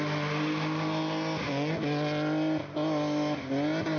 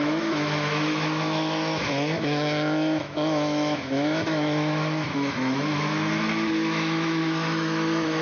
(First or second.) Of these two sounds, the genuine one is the first